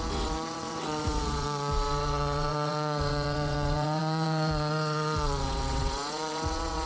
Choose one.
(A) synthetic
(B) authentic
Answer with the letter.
A